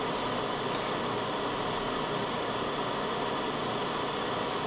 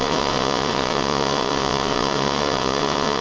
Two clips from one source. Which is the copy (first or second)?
second